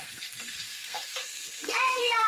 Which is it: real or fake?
fake